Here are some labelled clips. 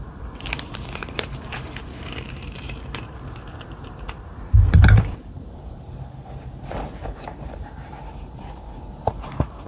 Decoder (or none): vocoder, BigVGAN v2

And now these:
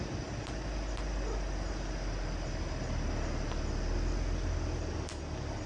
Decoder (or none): none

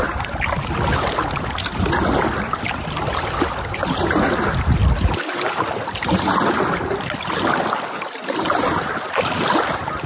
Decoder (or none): none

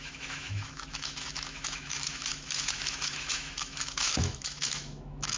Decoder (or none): autoencoder, DAC-VAE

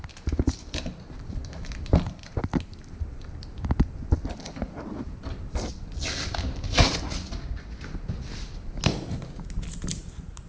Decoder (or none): none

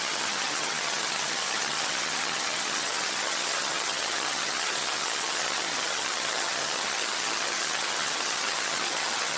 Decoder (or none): vocoder, HiFi-GAN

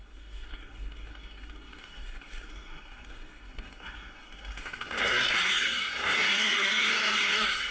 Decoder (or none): codec, SNAC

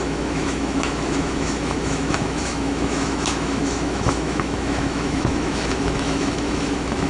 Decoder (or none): autoencoder, DAC-VAE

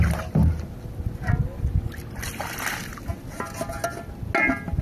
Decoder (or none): none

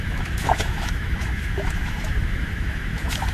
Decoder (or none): autoencoder, DAC-VAE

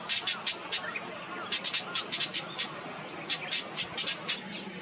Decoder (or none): none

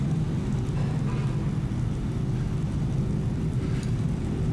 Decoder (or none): none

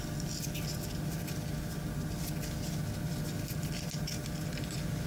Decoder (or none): none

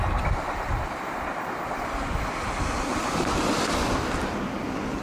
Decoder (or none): none